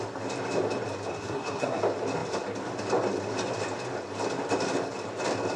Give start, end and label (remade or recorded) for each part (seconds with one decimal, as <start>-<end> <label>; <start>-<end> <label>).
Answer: 0.0-1.1 recorded; 1.1-1.8 remade; 1.8-5.6 recorded